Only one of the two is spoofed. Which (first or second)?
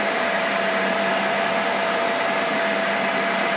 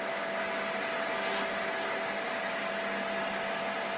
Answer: first